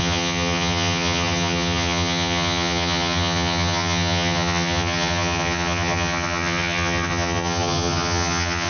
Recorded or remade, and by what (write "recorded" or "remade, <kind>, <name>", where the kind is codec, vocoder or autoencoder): remade, vocoder, HiFi-GAN